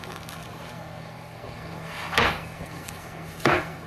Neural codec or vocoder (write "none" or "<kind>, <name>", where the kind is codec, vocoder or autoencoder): codec, SNAC